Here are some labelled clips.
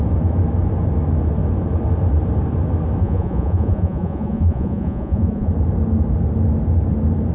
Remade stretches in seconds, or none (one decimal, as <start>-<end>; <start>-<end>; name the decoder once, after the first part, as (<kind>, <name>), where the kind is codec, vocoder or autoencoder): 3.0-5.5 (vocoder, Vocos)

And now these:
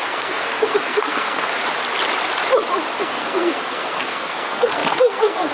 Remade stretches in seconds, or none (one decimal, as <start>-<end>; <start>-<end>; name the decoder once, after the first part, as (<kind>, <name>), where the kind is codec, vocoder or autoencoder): 0.0-1.5 (codec, SNAC); 3.0-5.5

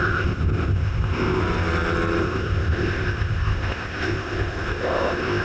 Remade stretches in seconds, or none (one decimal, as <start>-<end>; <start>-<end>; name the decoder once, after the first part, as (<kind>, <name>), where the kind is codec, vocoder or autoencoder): 0.0-1.4 (codec, ZipCodec); 2.2-5.4

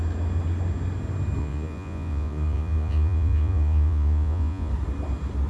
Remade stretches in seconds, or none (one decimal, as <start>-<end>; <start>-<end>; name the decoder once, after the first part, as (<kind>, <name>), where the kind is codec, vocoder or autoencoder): 1.4-4.7 (vocoder, Vocos)